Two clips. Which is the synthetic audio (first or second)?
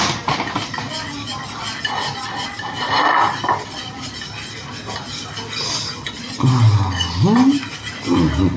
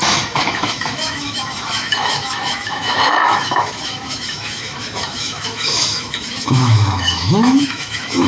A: second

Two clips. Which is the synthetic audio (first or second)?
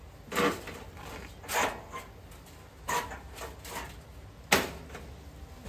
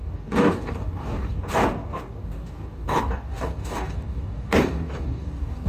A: second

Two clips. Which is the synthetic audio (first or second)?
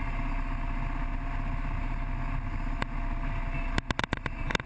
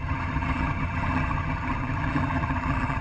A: second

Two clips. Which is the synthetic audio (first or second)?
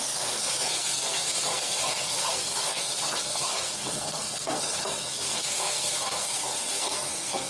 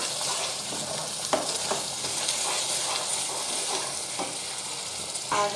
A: first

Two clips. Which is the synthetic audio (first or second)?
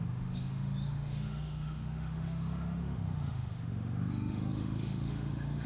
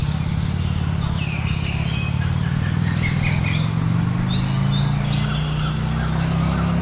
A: first